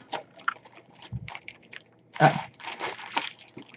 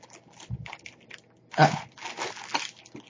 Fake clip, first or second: first